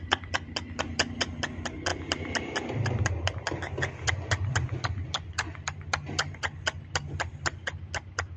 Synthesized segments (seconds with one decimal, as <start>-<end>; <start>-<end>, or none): none